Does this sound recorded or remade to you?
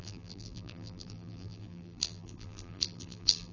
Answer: remade